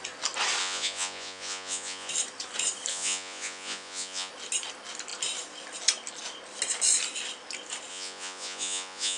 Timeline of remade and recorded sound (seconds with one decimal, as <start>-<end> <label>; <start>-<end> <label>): 0.0-0.6 recorded; 0.6-2.1 remade; 2.1-2.9 recorded; 2.9-4.3 remade; 4.3-7.9 recorded; 7.9-9.2 remade